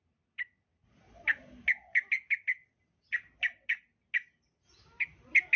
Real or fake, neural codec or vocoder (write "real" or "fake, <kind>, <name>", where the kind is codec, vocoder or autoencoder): real